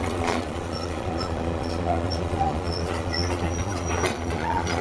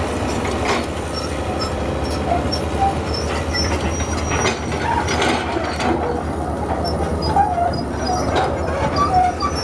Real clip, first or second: second